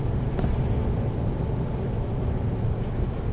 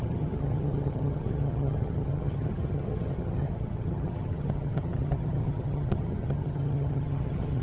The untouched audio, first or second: first